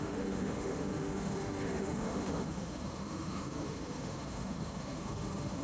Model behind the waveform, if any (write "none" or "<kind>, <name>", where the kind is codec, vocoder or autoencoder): autoencoder, DAC-VAE